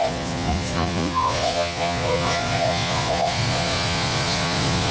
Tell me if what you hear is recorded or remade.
remade